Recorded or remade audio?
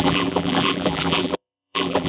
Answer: remade